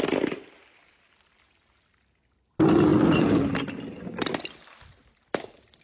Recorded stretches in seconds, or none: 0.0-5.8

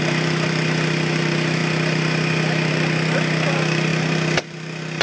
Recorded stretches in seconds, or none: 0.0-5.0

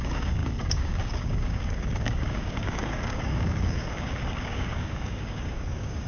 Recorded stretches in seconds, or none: none